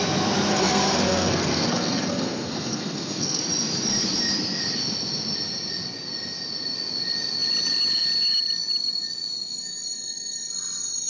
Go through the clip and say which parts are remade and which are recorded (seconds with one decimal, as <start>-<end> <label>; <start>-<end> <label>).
0.0-0.5 recorded; 0.5-3.4 remade; 3.4-11.1 recorded